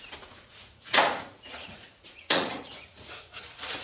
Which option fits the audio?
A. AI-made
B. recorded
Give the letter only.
A